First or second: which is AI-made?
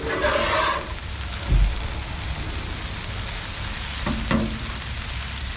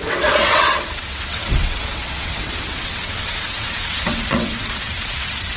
second